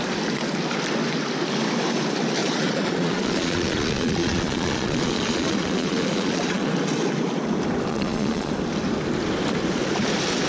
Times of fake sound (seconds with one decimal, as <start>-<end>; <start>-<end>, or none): 2.4-6.7; 7.9-8.5